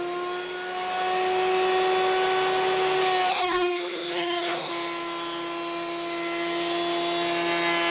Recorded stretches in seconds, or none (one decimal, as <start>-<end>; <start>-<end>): 0.0-3.3; 4.7-7.9